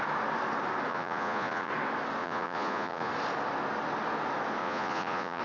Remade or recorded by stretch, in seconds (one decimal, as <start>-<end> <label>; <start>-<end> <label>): 0.0-0.9 recorded; 0.9-1.7 remade; 1.7-2.2 recorded; 2.2-3.1 remade; 3.1-4.6 recorded; 4.6-5.4 remade